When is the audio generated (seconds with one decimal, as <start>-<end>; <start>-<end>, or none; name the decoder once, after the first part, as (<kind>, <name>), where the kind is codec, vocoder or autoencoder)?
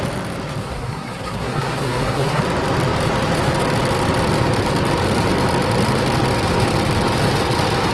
0.6-2.4 (codec, SNAC)